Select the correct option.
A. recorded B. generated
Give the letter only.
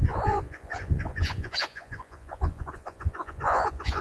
B